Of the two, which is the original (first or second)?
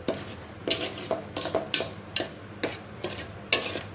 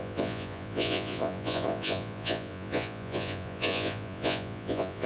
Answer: first